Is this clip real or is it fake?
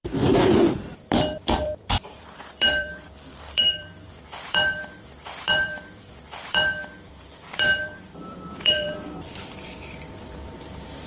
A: fake